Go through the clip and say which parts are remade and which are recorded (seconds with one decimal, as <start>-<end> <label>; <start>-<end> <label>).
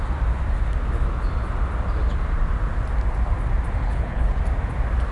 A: 0.0-3.8 recorded; 3.8-4.4 remade; 4.4-5.1 recorded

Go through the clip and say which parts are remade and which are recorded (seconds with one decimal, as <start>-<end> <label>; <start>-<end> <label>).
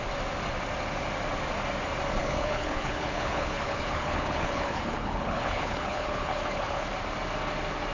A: 0.0-2.2 recorded; 2.2-6.9 remade; 6.9-7.9 recorded